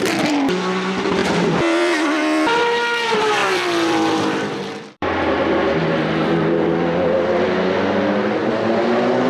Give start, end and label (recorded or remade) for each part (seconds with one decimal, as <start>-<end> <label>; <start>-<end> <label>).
0.0-1.2 recorded; 1.2-2.6 remade; 2.6-3.4 recorded; 3.4-6.0 remade; 6.0-9.3 recorded